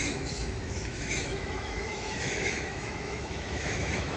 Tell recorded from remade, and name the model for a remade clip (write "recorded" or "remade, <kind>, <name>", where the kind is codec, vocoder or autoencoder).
remade, autoencoder, DAC-VAE